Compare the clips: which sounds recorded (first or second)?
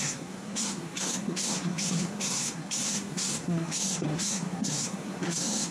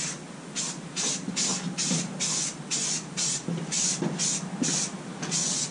second